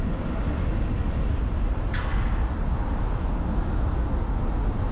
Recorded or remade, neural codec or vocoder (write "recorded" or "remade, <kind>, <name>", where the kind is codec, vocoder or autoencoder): recorded